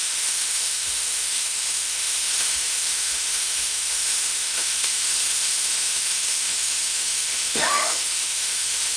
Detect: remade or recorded remade